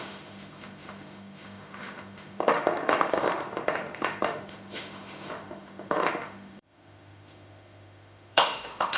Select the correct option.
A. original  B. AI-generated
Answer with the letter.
B